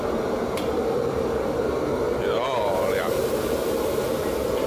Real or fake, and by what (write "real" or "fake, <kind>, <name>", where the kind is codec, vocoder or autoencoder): fake, vocoder, BigVGAN v2